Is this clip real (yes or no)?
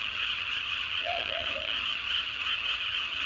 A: no